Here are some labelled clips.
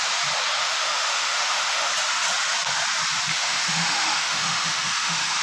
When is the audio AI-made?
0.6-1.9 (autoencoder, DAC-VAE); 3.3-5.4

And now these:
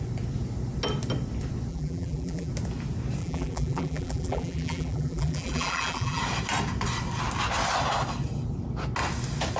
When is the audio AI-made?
1.7-2.5 (vocoder, BigVGAN v2); 3.2-6.2

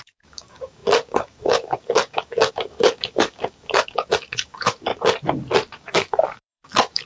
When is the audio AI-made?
0.0-4.9 (codec, DAC); 5.7-7.1

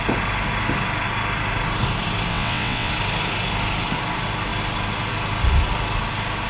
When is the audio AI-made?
2.3-2.9 (vocoder, WaveNeXt)

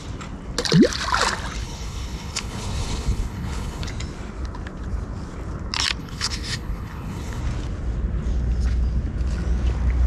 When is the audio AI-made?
1.6-3.9 (codec, HILCodec); 6.0-7.4

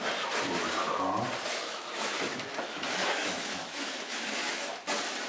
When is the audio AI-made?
1.6-4.7 (autoencoder, DAC-VAE)

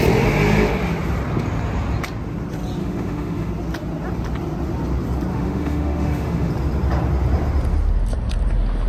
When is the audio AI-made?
2.8-3.5 (autoencoder, DAC-VAE); 5.3-6.5

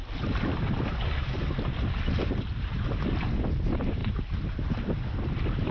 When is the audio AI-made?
4.0-4.7 (vocoder, BigVGAN v2)